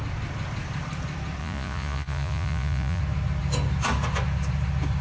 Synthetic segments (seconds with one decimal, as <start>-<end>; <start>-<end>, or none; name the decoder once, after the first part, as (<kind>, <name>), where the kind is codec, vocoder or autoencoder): 1.4-3.0 (vocoder, Vocos)

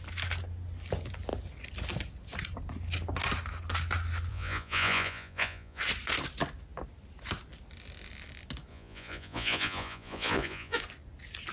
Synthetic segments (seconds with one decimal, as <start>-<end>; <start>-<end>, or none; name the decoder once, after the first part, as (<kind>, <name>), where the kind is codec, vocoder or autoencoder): 4.3-5.8 (vocoder, Vocos); 8.7-10.8

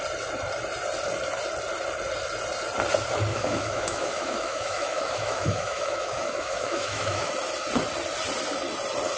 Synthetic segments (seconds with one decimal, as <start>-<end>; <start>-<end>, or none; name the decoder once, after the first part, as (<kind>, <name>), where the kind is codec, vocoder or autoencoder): 3.3-7.3 (autoencoder, DAC-VAE)

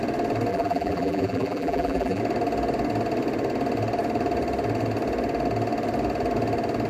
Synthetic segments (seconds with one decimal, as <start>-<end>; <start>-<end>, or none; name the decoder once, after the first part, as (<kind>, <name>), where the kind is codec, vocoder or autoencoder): 0.5-2.2 (vocoder, BigVGAN v2)